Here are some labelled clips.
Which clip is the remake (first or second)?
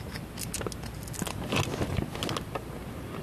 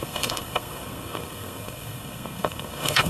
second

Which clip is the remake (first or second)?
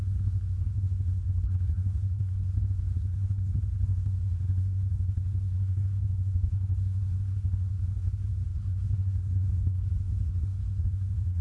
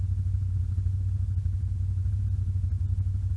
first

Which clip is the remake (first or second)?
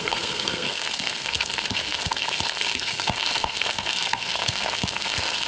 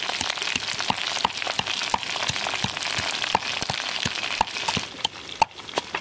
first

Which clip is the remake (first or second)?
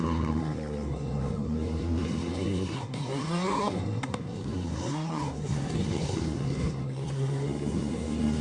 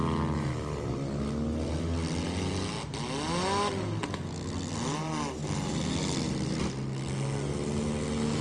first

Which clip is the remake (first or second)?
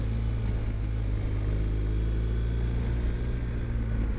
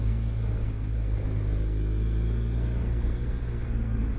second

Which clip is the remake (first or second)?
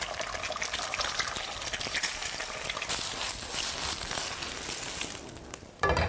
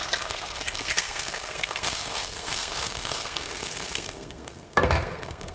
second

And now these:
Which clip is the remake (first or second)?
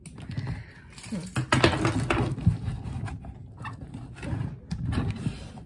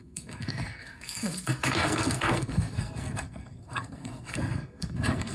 second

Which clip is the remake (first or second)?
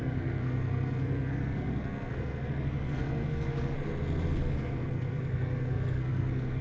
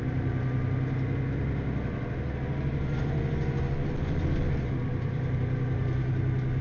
first